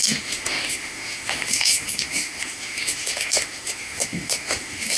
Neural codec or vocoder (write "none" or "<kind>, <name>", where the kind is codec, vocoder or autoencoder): autoencoder, DAC-VAE